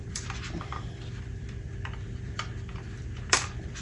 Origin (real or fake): fake